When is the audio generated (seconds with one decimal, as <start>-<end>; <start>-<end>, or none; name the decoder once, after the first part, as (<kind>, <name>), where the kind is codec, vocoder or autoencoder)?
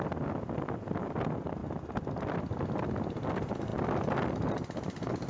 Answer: none